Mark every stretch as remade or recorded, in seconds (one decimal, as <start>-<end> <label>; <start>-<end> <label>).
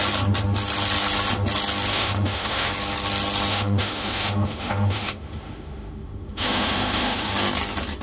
0.0-1.9 recorded; 1.9-2.7 remade; 2.7-3.5 recorded; 3.5-7.3 remade; 7.3-8.0 recorded